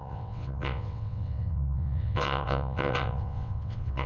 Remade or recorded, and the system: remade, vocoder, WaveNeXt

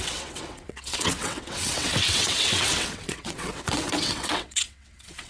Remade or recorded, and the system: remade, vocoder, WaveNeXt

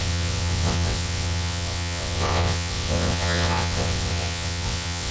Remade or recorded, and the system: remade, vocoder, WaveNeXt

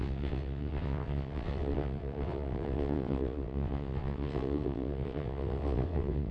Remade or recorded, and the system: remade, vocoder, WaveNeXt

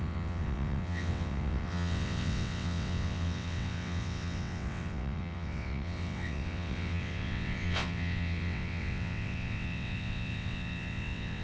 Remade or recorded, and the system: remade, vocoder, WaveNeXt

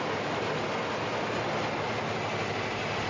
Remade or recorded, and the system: recorded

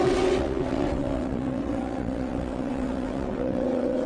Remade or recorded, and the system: remade, vocoder, WaveNeXt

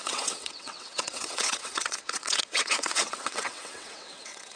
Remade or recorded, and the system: remade, vocoder, WaveNeXt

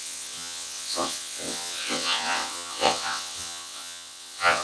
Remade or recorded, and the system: remade, vocoder, WaveNeXt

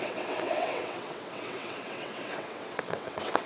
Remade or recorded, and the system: remade, vocoder, WaveNeXt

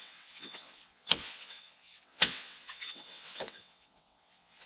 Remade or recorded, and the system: remade, vocoder, WaveNeXt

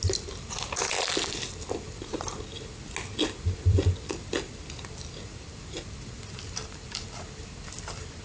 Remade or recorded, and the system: recorded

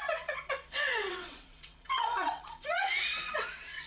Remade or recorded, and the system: remade, vocoder, WaveNeXt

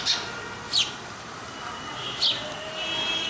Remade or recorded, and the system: recorded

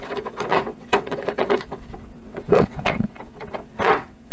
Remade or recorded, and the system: remade, vocoder, WaveNeXt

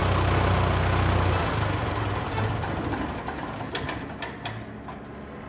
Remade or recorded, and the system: recorded